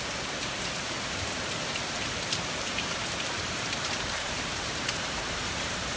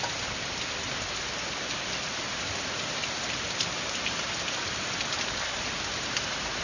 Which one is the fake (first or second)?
first